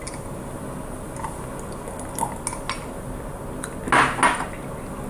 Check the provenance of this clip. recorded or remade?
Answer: recorded